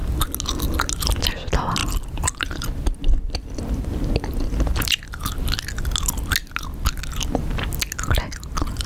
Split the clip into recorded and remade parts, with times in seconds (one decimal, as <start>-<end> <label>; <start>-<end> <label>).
0.0-8.9 recorded